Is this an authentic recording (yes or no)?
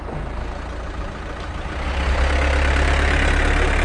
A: yes